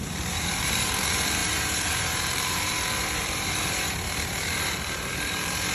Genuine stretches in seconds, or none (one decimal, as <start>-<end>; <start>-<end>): none